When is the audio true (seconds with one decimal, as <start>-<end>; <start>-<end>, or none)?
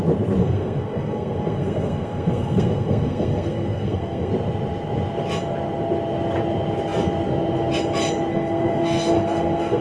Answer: 0.0-0.4; 4.3-8.3